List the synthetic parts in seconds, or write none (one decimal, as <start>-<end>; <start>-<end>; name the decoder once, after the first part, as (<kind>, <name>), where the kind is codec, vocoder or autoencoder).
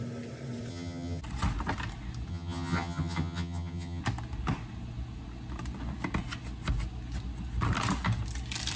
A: 0.7-1.2 (vocoder, HiFi-GAN); 2.3-4.0